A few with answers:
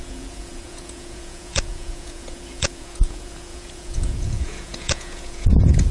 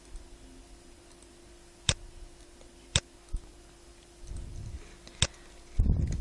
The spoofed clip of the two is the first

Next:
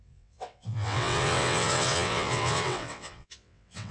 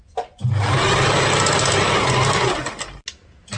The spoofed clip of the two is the first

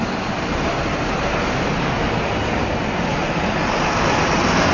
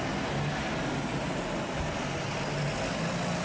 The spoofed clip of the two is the first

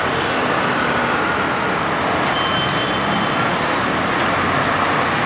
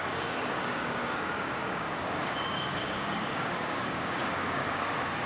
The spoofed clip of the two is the second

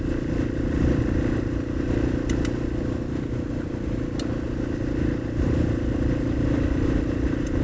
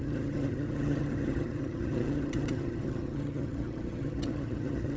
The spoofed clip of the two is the second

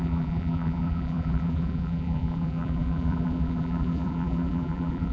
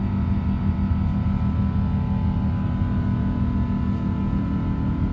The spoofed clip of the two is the first